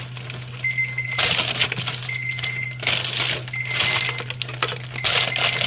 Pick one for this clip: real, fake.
real